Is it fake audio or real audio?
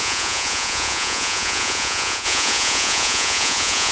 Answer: fake